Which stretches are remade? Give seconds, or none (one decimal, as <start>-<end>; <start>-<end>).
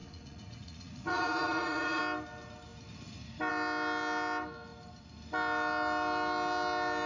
0.0-2.0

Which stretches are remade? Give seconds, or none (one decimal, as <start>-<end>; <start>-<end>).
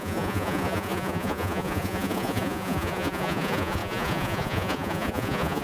0.0-5.6